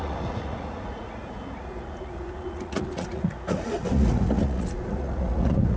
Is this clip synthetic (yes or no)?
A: yes